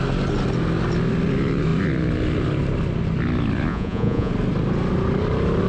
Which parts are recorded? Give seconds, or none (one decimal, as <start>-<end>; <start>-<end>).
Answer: 0.0-3.7; 4.3-5.7